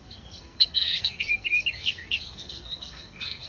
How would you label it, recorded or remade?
remade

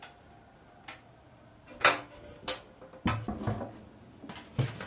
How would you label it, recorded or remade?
recorded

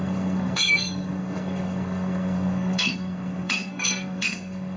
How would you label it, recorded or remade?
remade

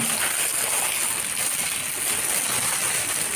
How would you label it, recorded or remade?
recorded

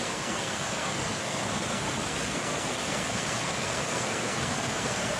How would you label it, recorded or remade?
remade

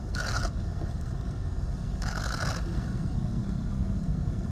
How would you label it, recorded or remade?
remade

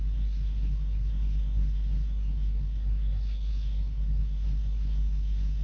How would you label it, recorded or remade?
remade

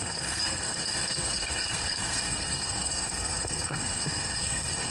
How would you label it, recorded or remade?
remade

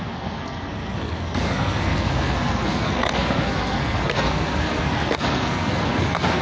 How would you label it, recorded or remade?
remade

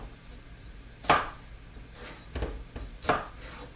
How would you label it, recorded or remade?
recorded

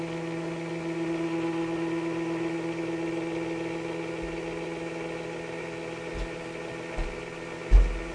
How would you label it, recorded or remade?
recorded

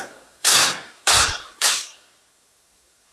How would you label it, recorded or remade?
remade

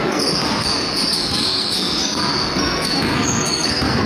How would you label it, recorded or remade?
remade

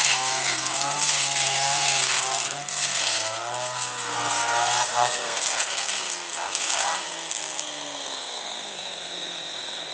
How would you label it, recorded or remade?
remade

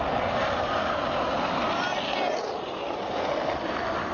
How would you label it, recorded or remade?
recorded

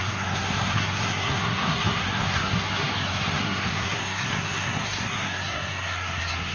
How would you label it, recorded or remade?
remade